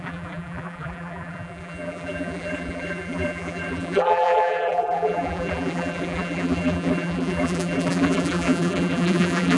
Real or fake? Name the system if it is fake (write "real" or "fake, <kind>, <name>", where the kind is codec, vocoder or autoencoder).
fake, vocoder, BigVGAN v2